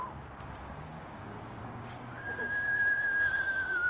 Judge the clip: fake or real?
fake